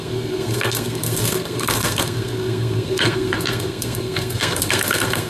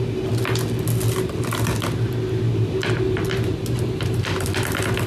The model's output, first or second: first